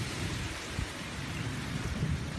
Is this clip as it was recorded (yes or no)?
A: no